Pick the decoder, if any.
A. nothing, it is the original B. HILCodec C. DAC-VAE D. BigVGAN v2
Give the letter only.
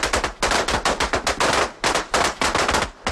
A